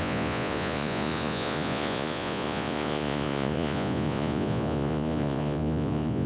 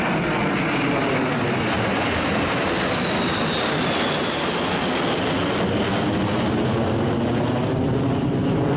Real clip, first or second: second